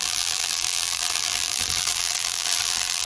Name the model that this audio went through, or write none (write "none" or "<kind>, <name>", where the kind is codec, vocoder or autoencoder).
vocoder, BigVGAN v2